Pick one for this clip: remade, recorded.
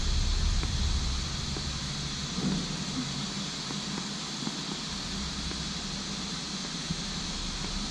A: recorded